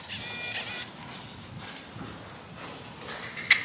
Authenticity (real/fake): real